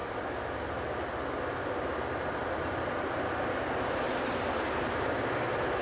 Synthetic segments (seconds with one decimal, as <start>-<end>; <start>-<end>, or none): none